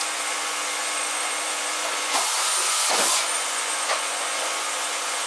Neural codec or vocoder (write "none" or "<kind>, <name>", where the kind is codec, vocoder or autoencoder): vocoder, Vocos